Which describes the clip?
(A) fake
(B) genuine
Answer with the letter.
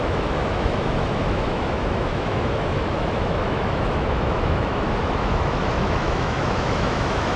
A